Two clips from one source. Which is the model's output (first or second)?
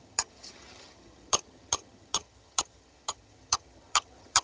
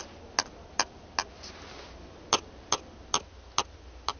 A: first